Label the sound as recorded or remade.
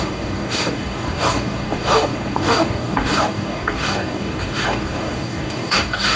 remade